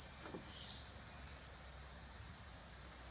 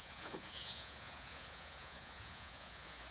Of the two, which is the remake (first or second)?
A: second